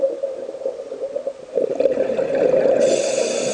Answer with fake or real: real